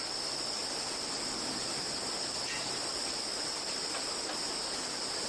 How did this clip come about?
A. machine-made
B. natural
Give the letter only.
B